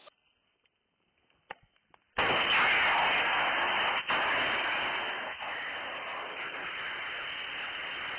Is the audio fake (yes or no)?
no